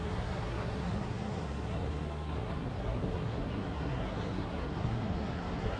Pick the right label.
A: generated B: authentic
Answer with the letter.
A